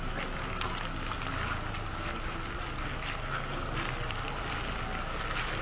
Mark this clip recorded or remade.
recorded